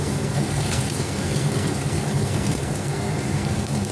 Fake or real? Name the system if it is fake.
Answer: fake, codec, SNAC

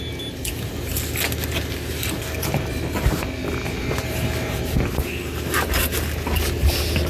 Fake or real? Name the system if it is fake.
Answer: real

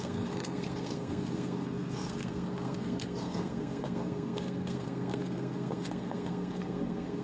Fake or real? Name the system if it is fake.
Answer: fake, codec, SNAC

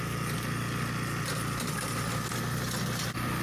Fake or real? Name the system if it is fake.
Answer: real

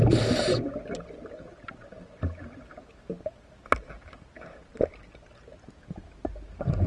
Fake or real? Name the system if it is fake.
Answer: real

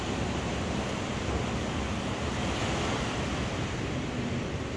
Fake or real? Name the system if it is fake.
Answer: real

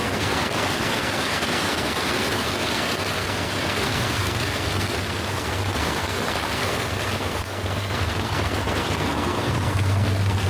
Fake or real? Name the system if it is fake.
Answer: fake, codec, SNAC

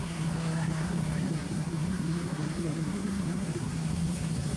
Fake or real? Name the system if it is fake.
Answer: fake, codec, SNAC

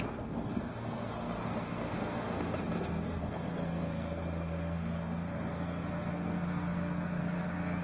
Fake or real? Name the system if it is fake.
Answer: fake, codec, SNAC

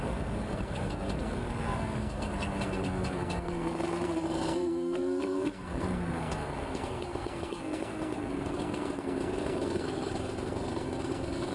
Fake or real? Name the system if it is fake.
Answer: fake, codec, SNAC